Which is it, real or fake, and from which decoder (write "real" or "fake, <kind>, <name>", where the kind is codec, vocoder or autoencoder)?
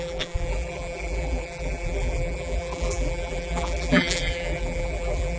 fake, vocoder, BigVGAN v2